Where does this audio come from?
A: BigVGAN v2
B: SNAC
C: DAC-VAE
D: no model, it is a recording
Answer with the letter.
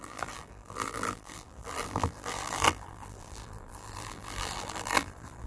A